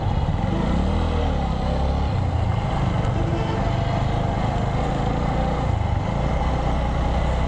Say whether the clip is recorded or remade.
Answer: recorded